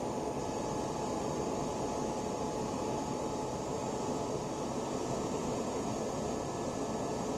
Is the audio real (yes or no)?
yes